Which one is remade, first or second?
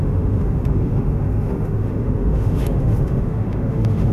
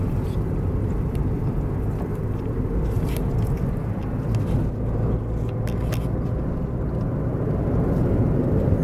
first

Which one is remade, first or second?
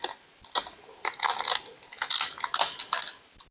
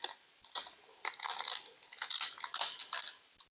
second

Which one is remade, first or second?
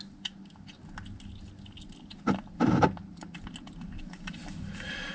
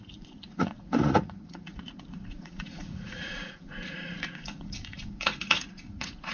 second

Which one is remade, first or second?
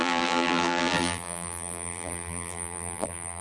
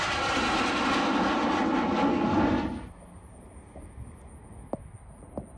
first